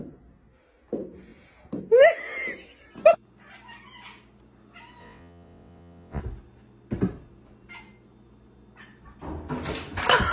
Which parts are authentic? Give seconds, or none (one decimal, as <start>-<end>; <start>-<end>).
0.0-5.0; 6.2-10.3